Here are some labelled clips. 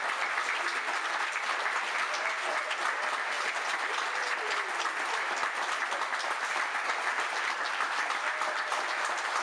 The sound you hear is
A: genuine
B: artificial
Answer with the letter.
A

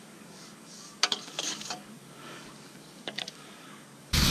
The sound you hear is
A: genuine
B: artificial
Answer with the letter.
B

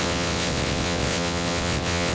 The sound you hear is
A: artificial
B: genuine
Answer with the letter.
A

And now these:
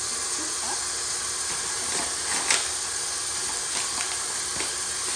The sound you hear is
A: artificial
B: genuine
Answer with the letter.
B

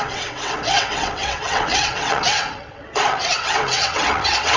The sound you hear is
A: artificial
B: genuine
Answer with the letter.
A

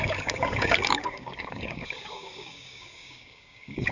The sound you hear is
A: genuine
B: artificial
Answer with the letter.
B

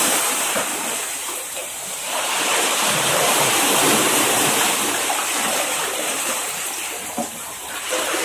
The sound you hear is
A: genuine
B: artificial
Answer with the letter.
B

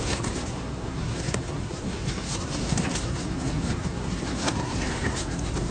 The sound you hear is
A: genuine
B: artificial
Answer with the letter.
B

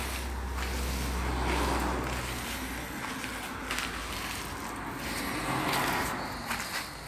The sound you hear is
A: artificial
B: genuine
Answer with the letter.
B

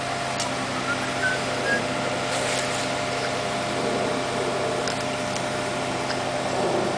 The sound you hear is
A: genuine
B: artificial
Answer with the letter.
A